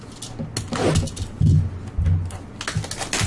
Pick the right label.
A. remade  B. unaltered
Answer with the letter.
B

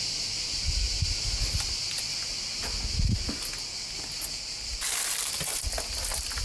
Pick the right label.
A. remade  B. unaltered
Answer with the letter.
B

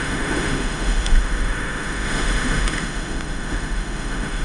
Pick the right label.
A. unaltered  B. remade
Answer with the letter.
B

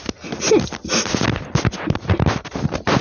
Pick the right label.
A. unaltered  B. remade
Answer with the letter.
A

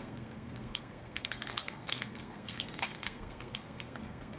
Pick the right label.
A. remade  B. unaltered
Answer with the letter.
A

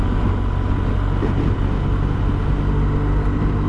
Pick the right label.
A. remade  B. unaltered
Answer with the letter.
B